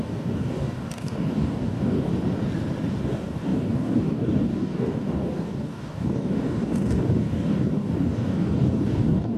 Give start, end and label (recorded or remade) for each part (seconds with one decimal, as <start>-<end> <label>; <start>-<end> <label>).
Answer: 0.0-2.1 remade; 2.1-3.0 recorded; 3.0-9.4 remade